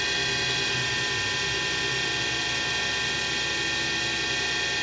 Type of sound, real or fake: real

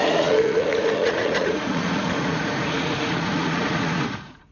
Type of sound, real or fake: fake